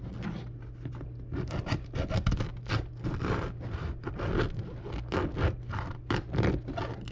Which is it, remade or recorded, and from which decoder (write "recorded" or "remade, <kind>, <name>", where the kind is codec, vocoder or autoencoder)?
recorded